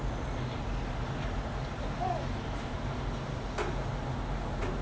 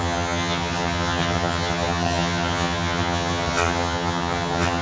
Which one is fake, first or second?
second